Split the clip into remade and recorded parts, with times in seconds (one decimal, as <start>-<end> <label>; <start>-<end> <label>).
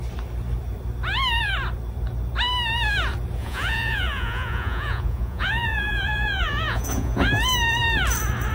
0.0-3.4 recorded; 3.4-7.3 remade; 7.3-8.5 recorded